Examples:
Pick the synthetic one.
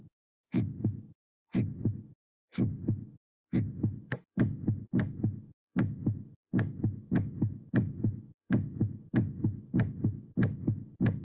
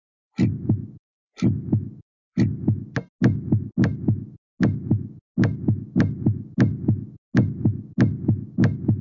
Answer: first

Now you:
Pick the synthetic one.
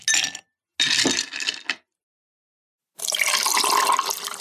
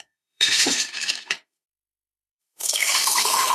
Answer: second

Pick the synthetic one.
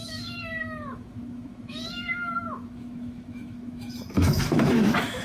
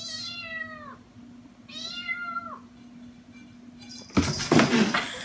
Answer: first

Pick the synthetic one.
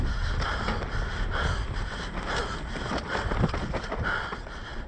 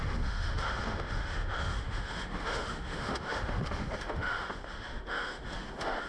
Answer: second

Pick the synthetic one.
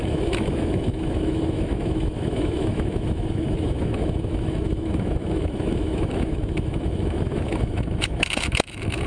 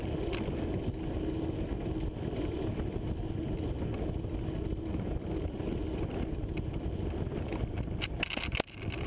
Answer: first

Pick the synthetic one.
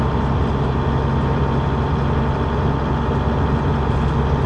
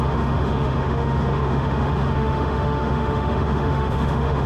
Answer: second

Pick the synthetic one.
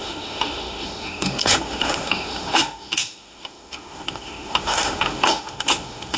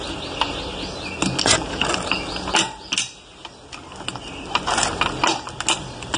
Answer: first